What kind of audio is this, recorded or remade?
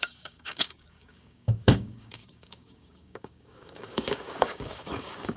remade